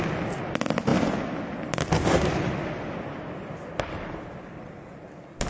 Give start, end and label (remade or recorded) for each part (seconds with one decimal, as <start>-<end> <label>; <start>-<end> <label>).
0.0-5.5 recorded